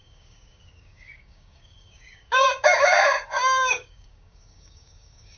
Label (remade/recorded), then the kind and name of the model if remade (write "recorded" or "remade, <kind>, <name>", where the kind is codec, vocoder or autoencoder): remade, codec, DAC